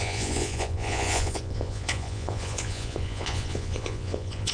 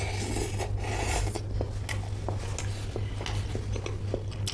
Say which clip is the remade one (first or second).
first